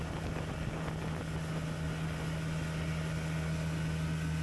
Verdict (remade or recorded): recorded